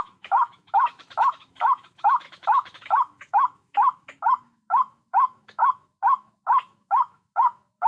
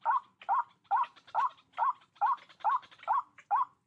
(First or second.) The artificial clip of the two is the first